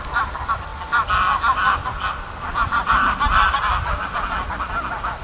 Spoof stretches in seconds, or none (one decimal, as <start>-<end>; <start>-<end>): none